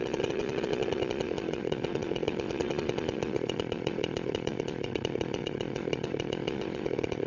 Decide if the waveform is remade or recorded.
remade